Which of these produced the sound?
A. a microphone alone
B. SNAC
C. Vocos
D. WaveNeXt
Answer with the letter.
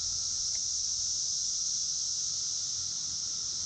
A